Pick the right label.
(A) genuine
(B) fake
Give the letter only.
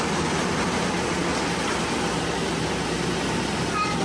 A